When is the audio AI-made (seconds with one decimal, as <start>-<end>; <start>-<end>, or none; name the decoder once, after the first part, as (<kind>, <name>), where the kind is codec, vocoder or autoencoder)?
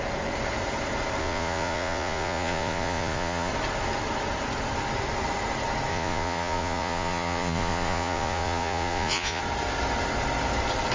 1.2-3.5 (vocoder, Vocos); 5.9-9.4